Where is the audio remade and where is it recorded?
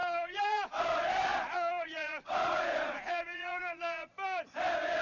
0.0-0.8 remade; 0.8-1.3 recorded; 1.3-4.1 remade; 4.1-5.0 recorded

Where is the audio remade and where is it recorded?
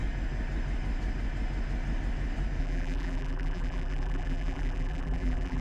0.0-2.6 recorded; 2.6-5.6 remade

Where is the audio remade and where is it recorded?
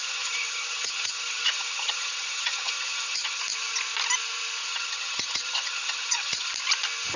0.0-3.4 remade; 3.4-4.6 recorded; 4.6-6.5 remade; 6.5-7.2 recorded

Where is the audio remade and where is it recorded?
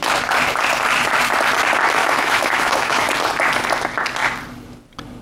0.0-2.0 recorded; 2.0-3.1 remade; 3.1-5.2 recorded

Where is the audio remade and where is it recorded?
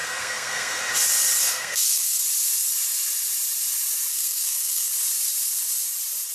0.0-0.8 remade; 0.8-1.4 recorded; 1.4-2.2 remade; 2.2-4.1 recorded; 4.1-4.9 remade; 4.9-6.3 recorded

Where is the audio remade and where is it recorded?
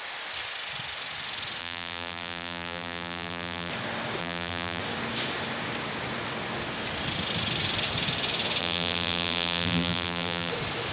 0.0-1.6 recorded; 1.6-3.7 remade; 3.7-4.2 recorded; 4.2-4.8 remade; 4.8-8.6 recorded; 8.6-10.5 remade; 10.5-10.9 recorded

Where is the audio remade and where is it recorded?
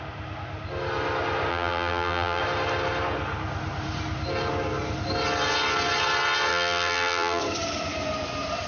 0.0-1.5 recorded; 1.5-2.4 remade; 2.4-6.5 recorded; 6.5-7.4 remade; 7.4-8.7 recorded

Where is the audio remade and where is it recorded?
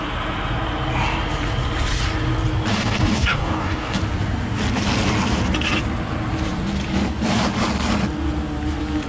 0.0-2.7 recorded; 2.7-4.0 remade; 4.0-9.1 recorded